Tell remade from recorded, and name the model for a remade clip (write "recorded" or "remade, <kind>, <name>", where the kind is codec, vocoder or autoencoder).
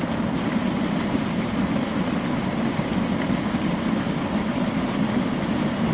recorded